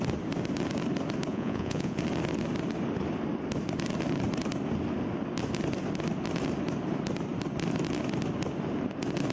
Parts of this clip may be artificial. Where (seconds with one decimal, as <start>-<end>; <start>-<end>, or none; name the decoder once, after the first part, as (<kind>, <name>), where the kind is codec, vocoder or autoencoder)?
1.3-2.0 (vocoder, Vocos)